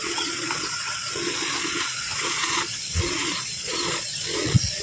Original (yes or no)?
no